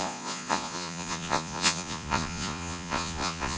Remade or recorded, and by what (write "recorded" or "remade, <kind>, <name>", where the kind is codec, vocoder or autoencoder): remade, vocoder, Vocos